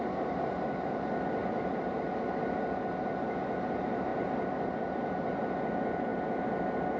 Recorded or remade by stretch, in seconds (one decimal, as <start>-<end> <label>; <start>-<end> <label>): 0.0-1.4 recorded; 1.4-2.0 remade; 2.0-4.1 recorded; 4.1-5.4 remade; 5.4-7.0 recorded